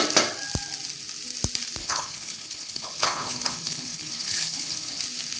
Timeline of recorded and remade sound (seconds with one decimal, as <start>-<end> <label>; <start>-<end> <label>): 0.0-1.8 recorded; 1.8-5.0 remade; 5.0-5.4 recorded